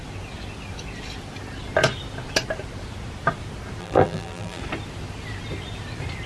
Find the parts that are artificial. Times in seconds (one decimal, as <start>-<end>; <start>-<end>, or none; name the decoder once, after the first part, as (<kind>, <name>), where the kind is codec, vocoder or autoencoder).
3.8-4.6 (vocoder, BigVGAN v2)